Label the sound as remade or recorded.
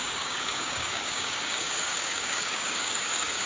remade